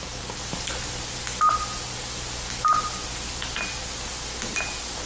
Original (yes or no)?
yes